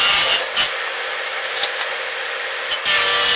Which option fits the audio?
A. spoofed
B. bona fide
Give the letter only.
B